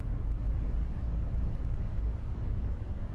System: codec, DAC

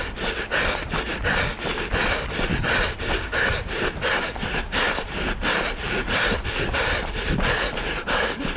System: none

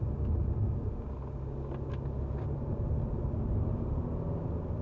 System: none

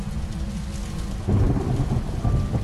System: none